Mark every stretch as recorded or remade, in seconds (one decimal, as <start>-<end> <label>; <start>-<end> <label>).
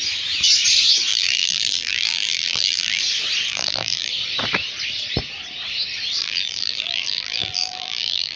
0.0-1.1 recorded; 1.1-3.0 remade; 3.0-3.5 recorded; 3.5-4.1 remade; 4.1-6.2 recorded; 6.2-8.4 remade